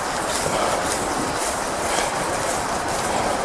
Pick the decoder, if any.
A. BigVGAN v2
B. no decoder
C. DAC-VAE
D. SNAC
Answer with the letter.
B